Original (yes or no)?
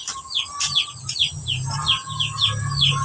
yes